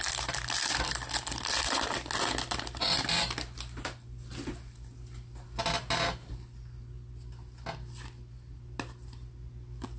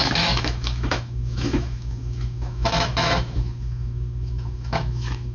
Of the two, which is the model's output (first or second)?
second